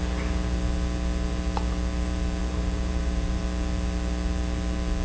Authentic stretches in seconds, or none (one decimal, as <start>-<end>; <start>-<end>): 0.0-2.4; 3.4-5.0